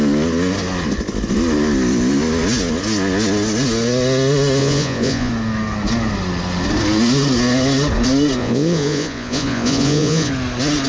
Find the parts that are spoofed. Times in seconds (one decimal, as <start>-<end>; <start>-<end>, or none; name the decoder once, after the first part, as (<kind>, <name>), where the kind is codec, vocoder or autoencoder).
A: 4.6-5.3 (vocoder, Vocos); 8.4-10.3